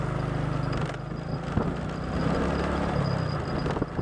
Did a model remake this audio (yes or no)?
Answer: no